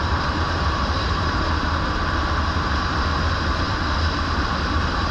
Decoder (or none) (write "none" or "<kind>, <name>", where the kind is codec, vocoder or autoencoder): vocoder, BigVGAN v2